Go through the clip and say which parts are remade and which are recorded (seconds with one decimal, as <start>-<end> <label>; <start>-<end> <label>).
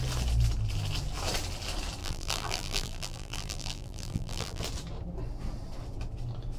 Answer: 0.0-2.0 recorded; 2.0-4.6 remade; 4.6-6.6 recorded